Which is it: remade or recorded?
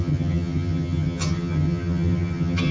remade